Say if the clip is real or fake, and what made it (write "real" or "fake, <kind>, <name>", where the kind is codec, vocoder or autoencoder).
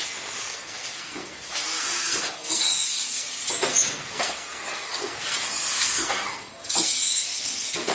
fake, codec, SNAC